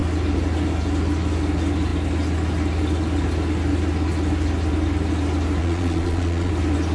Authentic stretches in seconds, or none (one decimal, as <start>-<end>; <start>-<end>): 0.0-5.6; 6.5-6.9